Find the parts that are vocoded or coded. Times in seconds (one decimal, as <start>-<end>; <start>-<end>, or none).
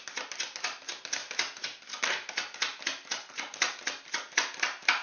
none